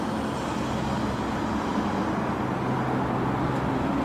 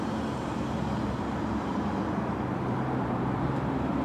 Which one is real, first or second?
first